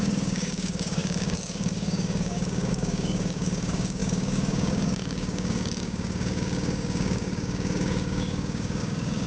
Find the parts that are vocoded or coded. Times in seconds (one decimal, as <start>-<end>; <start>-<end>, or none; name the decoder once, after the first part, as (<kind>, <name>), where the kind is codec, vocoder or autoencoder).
0.0-9.3 (codec, DAC)